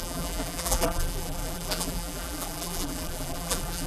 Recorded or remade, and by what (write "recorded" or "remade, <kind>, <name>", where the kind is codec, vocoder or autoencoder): remade, vocoder, BigVGAN v2